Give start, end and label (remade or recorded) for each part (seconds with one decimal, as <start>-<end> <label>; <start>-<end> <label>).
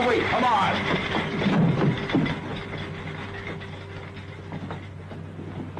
0.0-1.9 remade; 1.9-5.8 recorded